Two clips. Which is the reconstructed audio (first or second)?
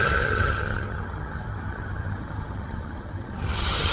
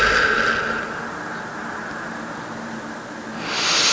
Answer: first